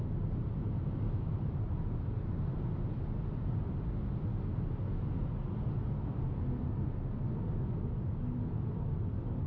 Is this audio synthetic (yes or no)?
no